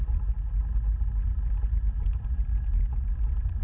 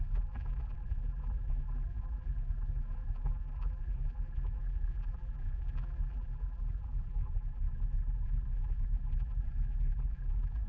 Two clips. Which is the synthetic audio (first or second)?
second